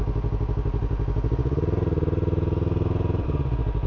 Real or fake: real